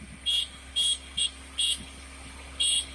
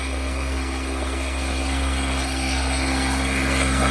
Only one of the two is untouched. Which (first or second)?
first